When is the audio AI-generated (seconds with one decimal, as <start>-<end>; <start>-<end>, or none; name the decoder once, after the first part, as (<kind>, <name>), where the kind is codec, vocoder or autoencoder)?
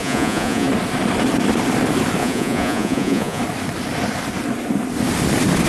0.0-0.7 (vocoder, Vocos); 2.2-3.4